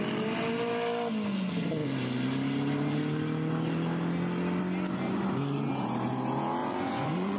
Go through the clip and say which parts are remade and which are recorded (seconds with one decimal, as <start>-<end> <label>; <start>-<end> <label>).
0.0-6.6 recorded; 6.6-7.4 remade